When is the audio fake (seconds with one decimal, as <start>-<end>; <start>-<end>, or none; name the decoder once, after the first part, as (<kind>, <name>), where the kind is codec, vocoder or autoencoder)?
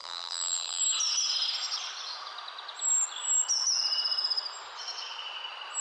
0.0-0.8 (vocoder, BigVGAN v2)